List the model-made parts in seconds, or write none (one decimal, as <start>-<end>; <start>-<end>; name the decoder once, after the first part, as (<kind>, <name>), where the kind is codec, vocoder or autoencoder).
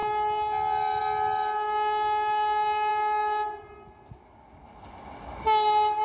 none